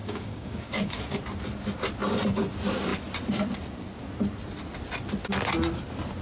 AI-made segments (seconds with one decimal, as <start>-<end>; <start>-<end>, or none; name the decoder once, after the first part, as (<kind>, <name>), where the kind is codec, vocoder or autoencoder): 0.0-1.2 (codec, DAC)